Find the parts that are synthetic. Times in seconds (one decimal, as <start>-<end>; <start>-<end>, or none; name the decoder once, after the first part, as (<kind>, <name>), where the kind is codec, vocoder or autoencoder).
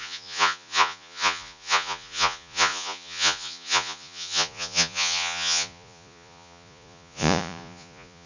0.0-8.3 (vocoder, Vocos)